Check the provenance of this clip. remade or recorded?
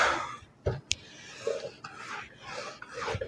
recorded